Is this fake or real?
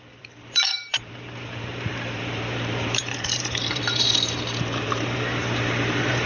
fake